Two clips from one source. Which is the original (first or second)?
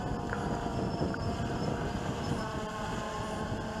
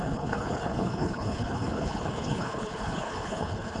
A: first